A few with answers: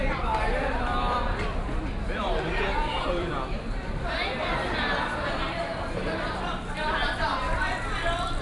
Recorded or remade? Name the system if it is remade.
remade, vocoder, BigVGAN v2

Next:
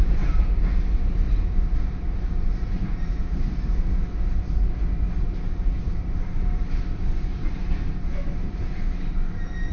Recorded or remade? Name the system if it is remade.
remade, vocoder, BigVGAN v2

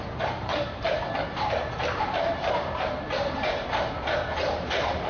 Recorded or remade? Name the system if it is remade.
remade, vocoder, BigVGAN v2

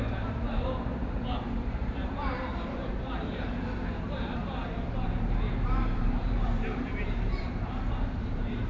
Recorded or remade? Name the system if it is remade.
remade, vocoder, BigVGAN v2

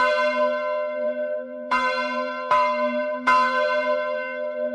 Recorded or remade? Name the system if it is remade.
remade, vocoder, BigVGAN v2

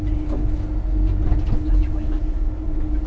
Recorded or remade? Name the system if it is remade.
recorded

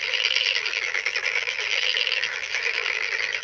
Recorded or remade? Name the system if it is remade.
remade, vocoder, BigVGAN v2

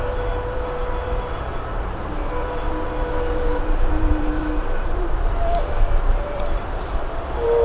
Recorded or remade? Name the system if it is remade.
remade, vocoder, BigVGAN v2